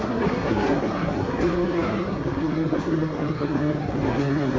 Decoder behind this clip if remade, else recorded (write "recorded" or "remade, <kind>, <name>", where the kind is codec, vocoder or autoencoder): remade, codec, SNAC